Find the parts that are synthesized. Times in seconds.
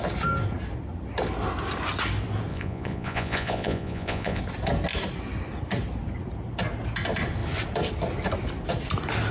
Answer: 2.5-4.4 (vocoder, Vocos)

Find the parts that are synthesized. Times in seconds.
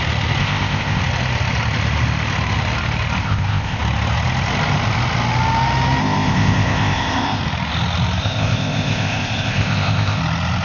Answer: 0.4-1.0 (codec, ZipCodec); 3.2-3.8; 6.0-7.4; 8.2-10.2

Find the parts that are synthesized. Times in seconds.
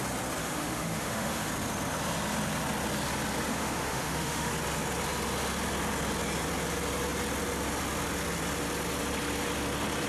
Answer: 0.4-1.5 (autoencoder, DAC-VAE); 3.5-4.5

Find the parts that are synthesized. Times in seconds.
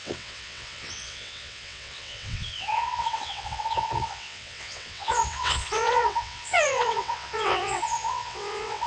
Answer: 0.0-8.9 (vocoder, WaveNeXt)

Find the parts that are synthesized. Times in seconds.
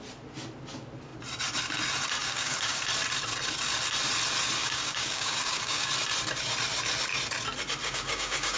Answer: 2.2-2.8 (codec, DAC); 4.6-5.9; 7.8-8.6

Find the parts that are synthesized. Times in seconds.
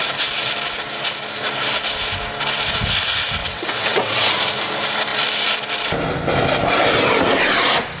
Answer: 3.4-4.3 (vocoder, WaveNeXt)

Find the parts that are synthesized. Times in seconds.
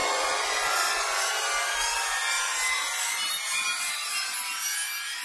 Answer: 0.0-1.3 (vocoder, Vocos)